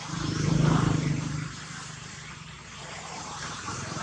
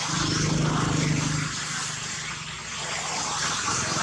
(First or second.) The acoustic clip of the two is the second